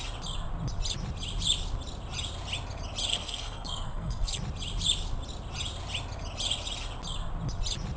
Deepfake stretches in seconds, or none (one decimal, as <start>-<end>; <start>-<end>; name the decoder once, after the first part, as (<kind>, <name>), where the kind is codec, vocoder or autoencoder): 3.1-4.4 (codec, SNAC)